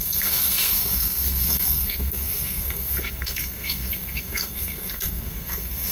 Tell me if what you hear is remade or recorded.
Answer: remade